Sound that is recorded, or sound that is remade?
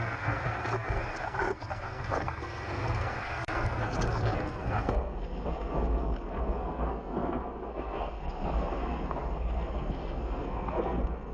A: remade